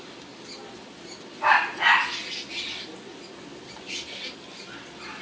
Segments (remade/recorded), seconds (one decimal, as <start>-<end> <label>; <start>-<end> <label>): 0.0-5.2 recorded